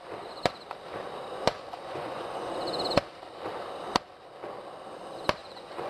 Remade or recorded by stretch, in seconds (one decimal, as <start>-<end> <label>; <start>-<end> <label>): 0.0-1.3 recorded; 1.3-2.5 remade; 2.5-5.4 recorded; 5.4-5.9 remade